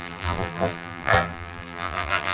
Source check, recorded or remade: remade